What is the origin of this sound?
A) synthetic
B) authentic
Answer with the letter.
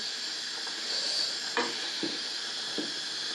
B